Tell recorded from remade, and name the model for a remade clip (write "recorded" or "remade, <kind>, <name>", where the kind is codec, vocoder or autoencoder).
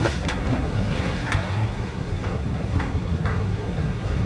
remade, codec, SNAC